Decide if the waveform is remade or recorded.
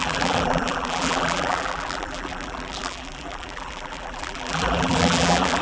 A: remade